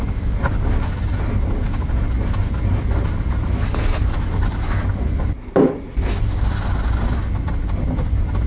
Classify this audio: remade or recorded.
recorded